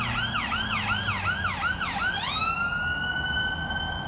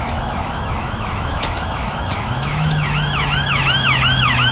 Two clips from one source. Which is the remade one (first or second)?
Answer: second